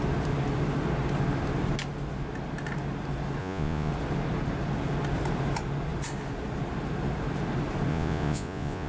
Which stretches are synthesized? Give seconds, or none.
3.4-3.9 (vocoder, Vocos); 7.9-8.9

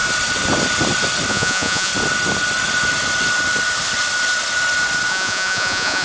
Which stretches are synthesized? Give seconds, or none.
1.3-1.9 (vocoder, Vocos); 5.1-6.0

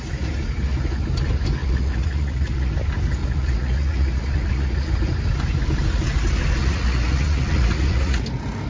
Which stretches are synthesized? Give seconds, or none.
1.6-2.7 (vocoder, Vocos); 3.2-4.9; 6.6-8.2

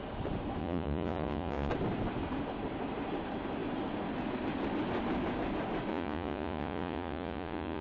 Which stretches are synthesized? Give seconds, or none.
0.6-1.7 (vocoder, Vocos); 5.9-7.8

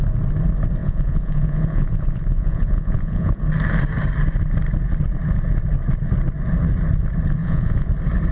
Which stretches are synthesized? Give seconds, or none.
0.8-3.4 (vocoder, Vocos); 7.4-7.9

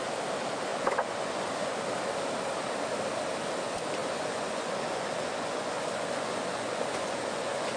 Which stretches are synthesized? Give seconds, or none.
0.7-1.8 (vocoder, Vocos); 4.0-7.8